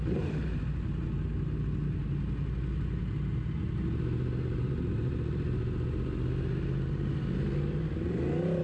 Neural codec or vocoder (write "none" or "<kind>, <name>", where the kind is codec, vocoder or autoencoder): none